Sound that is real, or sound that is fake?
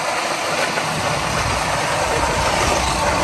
real